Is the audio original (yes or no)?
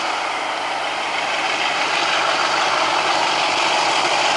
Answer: yes